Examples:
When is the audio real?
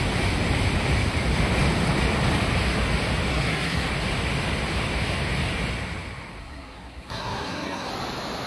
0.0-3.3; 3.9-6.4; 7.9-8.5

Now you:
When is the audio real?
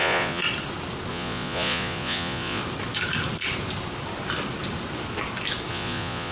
0.4-1.1; 2.6-5.7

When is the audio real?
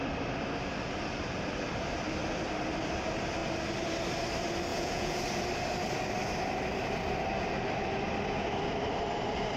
0.0-4.7; 5.2-9.6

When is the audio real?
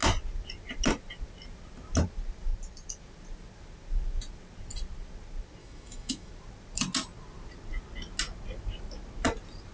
0.0-5.6; 6.3-9.7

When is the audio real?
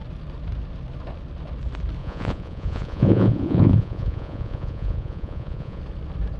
0.0-2.0; 5.8-6.4